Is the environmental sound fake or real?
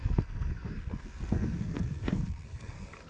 fake